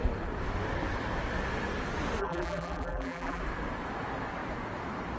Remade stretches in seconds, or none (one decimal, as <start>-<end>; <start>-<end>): 2.2-3.4